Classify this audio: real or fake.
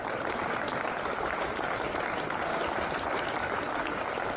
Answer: real